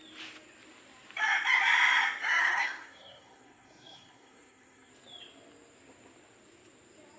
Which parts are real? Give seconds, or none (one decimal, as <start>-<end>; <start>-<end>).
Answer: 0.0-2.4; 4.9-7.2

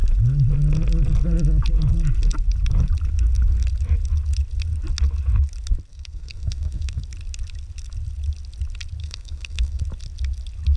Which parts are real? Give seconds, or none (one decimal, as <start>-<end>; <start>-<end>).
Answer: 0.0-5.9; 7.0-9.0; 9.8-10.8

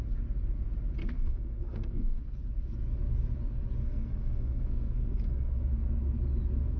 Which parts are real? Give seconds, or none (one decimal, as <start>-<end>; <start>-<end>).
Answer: 0.0-1.0; 2.2-3.8; 5.7-6.8